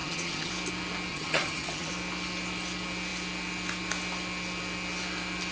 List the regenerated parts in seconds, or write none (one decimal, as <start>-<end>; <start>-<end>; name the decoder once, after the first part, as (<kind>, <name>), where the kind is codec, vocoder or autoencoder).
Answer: 0.0-0.5 (vocoder, HiFi-GAN); 1.1-1.9